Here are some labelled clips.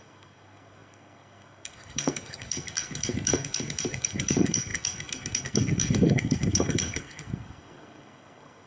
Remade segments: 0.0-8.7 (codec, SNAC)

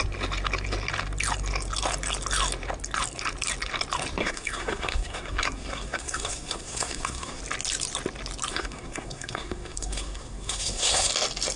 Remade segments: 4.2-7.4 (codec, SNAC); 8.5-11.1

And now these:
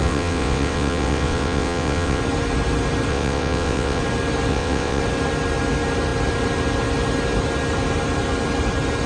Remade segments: 0.0-2.2 (vocoder, WaveNeXt); 3.1-4.0; 4.5-5.0

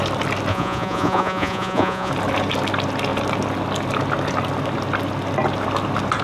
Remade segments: 0.5-2.1 (vocoder, Vocos)